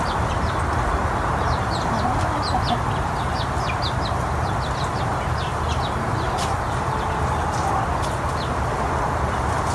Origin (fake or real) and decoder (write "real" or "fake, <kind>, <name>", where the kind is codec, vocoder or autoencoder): real